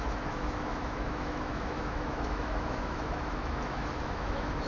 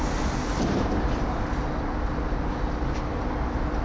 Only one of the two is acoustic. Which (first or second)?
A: second